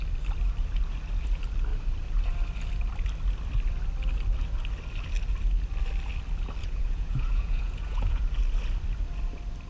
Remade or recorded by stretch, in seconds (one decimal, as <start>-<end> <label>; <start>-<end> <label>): 0.0-6.6 recorded; 6.6-8.2 remade; 8.2-9.7 recorded